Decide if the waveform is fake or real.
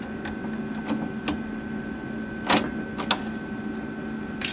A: real